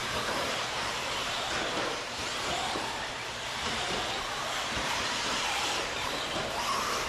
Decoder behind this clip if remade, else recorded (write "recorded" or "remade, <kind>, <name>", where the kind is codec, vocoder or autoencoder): remade, vocoder, BigVGAN v2